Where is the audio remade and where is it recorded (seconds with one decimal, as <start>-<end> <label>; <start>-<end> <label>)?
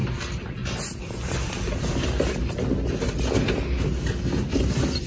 0.0-5.1 recorded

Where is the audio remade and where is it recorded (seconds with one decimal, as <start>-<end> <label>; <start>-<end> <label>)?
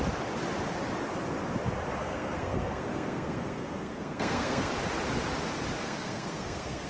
0.0-2.0 recorded; 2.0-4.7 remade; 4.7-5.8 recorded; 5.8-6.9 remade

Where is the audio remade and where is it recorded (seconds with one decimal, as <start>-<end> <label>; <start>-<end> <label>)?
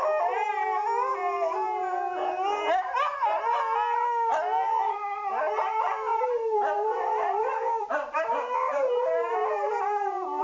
0.0-1.1 recorded; 1.1-1.8 remade; 1.8-6.1 recorded; 6.1-10.4 remade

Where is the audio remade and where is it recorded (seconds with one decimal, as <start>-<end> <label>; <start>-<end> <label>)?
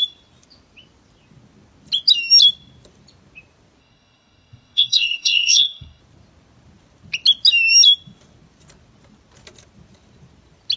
0.0-3.8 recorded; 3.8-6.0 remade; 6.0-10.8 recorded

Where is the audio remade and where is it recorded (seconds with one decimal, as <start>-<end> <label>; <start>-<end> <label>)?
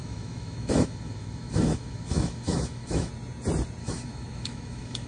0.0-3.1 remade; 3.1-3.8 recorded; 3.8-5.1 remade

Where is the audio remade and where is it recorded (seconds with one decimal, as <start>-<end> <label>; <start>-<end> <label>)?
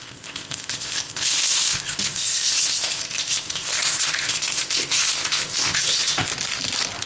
0.0-6.3 remade; 6.3-7.1 recorded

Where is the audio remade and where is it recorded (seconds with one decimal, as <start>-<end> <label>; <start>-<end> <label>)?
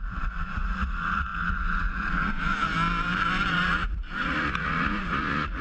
0.0-2.7 remade; 2.7-3.5 recorded; 3.5-5.6 remade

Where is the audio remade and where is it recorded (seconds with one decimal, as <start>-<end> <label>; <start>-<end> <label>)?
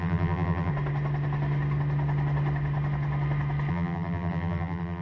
0.0-0.7 remade; 0.7-3.7 recorded; 3.7-5.0 remade